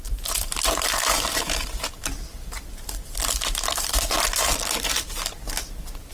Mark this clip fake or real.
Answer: fake